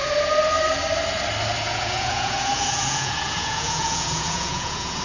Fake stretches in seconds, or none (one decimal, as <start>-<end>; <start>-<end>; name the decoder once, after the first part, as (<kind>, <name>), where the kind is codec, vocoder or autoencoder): 1.7-5.0 (vocoder, Vocos)

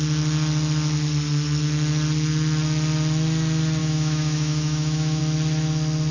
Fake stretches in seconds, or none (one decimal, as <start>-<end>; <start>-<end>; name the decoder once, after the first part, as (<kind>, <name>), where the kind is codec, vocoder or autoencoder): 3.8-5.2 (autoencoder, DAC-VAE)

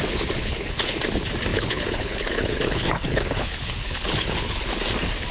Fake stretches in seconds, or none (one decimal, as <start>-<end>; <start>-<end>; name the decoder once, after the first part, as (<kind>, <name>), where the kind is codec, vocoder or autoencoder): 0.4-1.0 (codec, HILCodec); 1.5-4.7

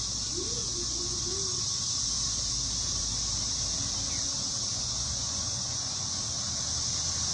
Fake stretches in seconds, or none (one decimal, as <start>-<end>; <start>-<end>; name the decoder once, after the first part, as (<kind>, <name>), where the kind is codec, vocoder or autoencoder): 0.6-1.2 (vocoder, Vocos); 4.7-6.2

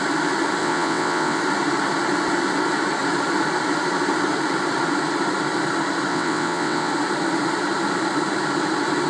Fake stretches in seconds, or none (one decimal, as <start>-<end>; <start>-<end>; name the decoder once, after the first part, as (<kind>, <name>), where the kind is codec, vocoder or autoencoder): 0.6-1.4 (vocoder, WaveNeXt); 6.1-6.9